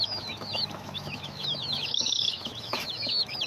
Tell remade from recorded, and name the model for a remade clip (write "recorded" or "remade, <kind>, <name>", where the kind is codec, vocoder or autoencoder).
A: remade, autoencoder, DAC-VAE